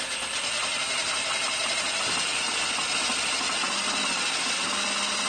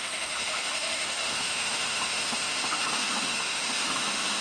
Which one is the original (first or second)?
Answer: first